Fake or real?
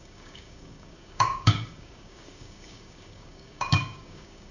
fake